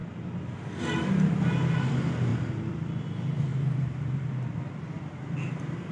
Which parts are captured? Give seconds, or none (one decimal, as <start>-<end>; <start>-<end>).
0.0-2.3